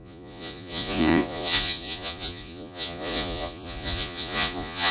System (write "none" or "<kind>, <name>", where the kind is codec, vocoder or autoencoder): vocoder, Vocos